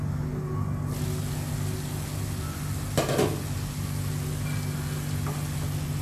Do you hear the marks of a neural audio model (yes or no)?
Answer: no